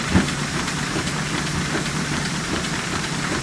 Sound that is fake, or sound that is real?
fake